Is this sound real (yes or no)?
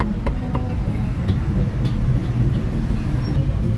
yes